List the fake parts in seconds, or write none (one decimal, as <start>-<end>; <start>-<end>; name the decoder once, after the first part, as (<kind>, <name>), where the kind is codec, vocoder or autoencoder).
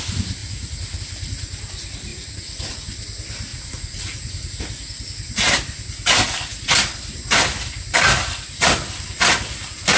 0.4-1.0 (vocoder, Vocos); 2.1-2.7; 3.5-4.6